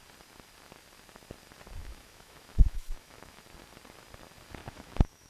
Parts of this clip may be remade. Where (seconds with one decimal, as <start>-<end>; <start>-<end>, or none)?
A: 1.8-3.4; 4.6-5.3